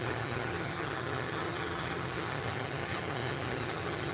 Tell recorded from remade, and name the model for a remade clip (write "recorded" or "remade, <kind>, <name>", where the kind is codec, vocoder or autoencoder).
remade, vocoder, HiFi-GAN